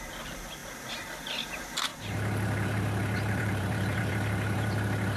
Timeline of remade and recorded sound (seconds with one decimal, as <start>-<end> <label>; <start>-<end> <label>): 0.0-1.9 recorded; 1.9-5.2 remade